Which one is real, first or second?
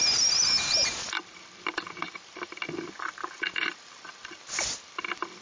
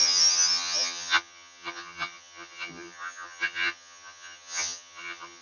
first